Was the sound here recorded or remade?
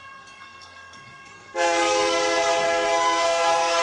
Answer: remade